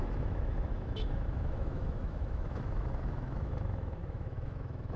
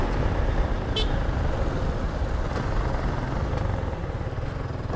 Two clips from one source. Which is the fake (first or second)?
first